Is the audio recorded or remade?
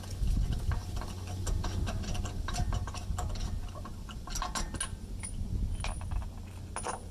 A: recorded